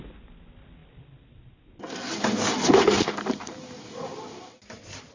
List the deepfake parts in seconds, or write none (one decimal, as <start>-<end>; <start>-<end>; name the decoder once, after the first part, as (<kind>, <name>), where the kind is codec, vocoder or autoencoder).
none

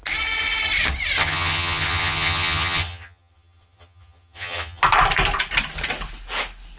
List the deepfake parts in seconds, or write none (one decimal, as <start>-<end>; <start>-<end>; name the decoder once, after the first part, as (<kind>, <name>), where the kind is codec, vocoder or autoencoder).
1.2-4.8 (vocoder, HiFi-GAN)